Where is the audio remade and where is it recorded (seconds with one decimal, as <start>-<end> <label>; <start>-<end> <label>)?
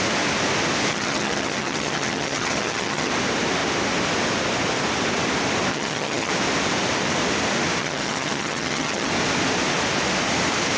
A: 0.0-0.9 recorded; 0.9-3.1 remade; 3.1-5.7 recorded; 5.7-6.3 remade; 6.3-7.8 recorded; 7.8-9.1 remade; 9.1-10.8 recorded